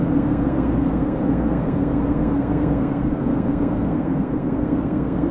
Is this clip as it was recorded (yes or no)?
no